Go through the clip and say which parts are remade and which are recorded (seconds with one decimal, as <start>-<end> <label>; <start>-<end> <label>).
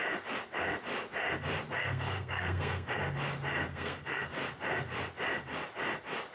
0.0-1.8 recorded; 1.8-3.0 remade; 3.0-3.7 recorded; 3.7-4.3 remade; 4.3-6.3 recorded